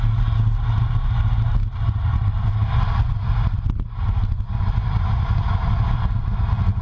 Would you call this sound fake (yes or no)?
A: no